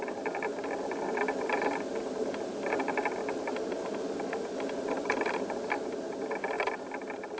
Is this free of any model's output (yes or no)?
no